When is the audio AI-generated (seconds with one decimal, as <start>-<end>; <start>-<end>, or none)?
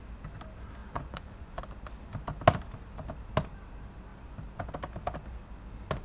0.8-1.6